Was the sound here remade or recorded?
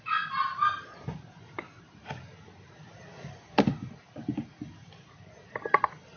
recorded